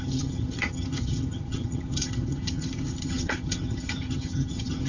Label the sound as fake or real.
fake